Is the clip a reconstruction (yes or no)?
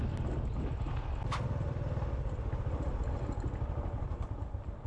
no